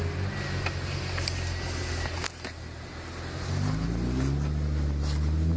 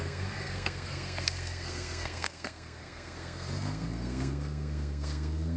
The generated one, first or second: second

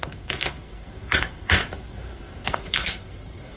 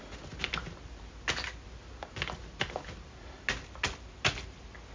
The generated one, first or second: first